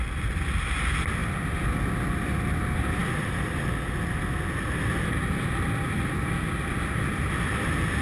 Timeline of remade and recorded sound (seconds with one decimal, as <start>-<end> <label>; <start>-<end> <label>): 0.0-8.0 recorded